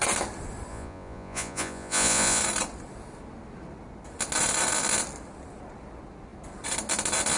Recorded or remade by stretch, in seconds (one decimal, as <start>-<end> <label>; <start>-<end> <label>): 0.0-0.7 recorded; 0.7-2.4 remade; 2.4-7.4 recorded